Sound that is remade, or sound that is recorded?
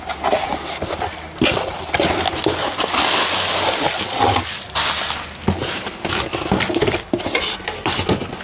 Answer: recorded